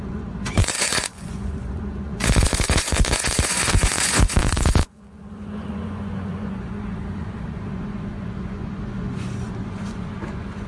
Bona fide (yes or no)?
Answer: no